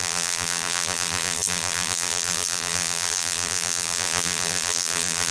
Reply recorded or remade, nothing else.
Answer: remade